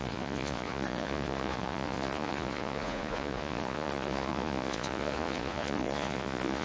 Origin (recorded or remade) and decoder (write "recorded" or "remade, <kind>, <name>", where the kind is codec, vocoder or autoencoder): remade, vocoder, Vocos